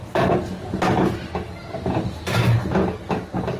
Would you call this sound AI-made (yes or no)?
no